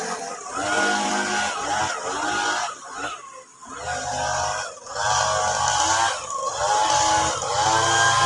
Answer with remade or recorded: recorded